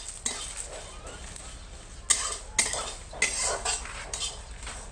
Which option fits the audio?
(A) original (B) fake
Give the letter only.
A